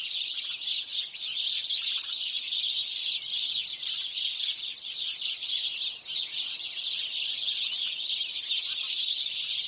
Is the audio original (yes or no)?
yes